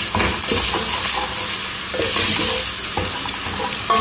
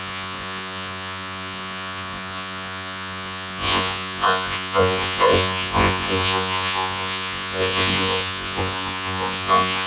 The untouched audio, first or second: first